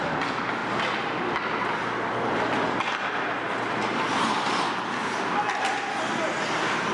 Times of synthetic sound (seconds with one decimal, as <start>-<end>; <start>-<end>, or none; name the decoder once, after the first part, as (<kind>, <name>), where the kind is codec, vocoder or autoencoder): none